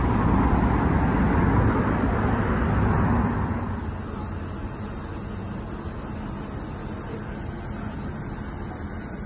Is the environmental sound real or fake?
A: real